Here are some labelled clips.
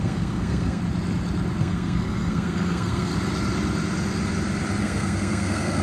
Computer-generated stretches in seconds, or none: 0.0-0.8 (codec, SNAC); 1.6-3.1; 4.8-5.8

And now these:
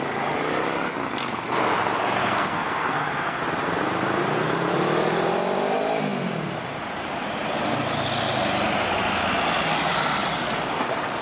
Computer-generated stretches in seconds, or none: 2.2-3.4 (codec, SNAC)

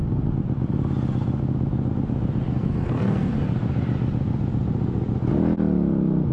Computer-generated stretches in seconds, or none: 2.5-3.3 (codec, SNAC)

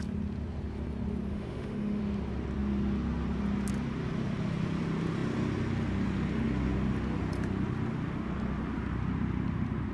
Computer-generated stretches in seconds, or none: 1.3-2.0 (autoencoder, DAC-VAE)

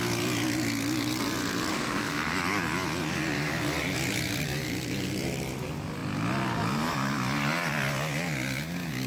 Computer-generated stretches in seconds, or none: 1.7-2.3 (codec, SNAC)